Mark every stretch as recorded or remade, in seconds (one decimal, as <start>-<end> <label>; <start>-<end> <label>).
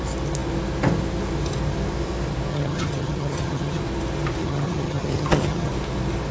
0.0-2.5 recorded; 2.5-3.8 remade; 3.8-4.4 recorded; 4.4-5.7 remade; 5.7-6.3 recorded